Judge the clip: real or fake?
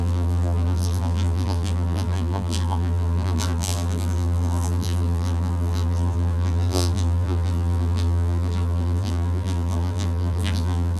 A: fake